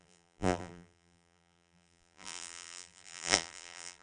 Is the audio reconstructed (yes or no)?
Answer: yes